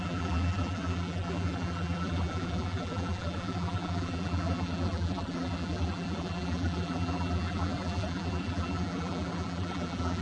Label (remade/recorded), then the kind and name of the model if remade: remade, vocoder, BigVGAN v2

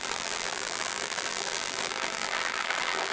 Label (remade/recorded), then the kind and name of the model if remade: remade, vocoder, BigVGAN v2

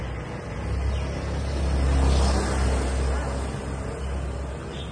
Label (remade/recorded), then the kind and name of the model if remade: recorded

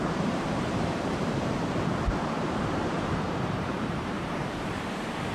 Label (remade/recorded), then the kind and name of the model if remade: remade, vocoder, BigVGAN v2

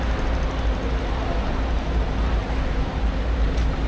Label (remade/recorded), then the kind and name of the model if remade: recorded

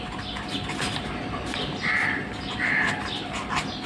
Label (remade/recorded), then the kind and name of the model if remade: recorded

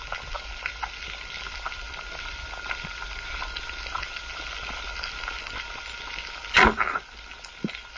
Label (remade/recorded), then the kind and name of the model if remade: recorded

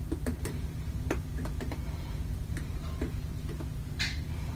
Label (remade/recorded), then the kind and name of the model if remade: remade, vocoder, BigVGAN v2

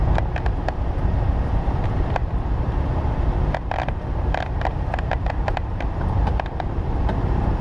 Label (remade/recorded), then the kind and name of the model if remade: remade, vocoder, BigVGAN v2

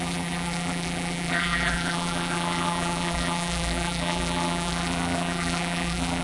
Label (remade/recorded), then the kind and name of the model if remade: remade, vocoder, BigVGAN v2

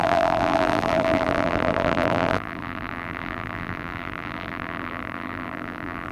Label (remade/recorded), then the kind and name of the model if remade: remade, vocoder, BigVGAN v2